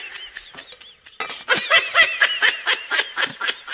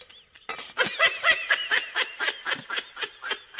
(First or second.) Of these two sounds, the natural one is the first